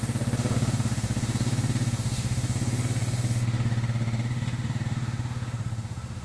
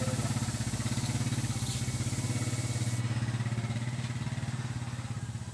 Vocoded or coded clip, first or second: first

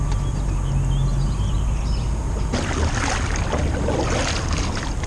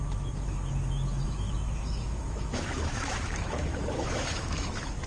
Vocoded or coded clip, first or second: second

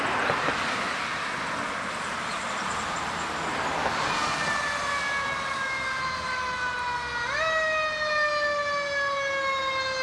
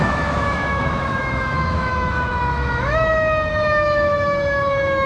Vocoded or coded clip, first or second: second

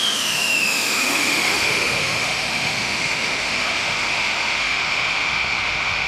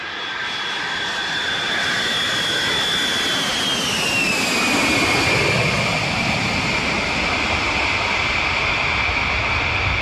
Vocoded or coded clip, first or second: first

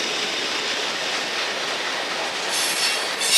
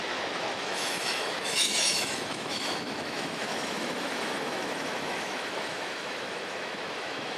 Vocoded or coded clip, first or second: second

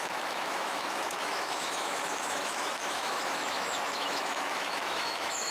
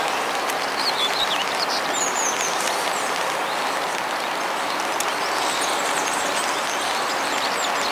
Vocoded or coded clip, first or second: first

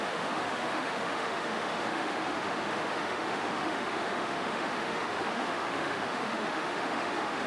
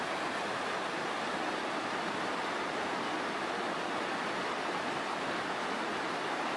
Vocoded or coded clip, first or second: first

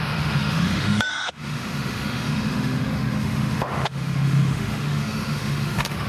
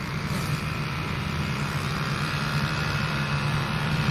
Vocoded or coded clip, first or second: first